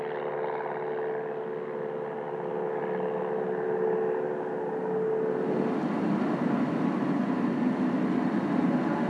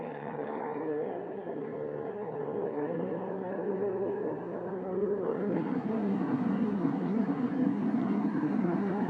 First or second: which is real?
first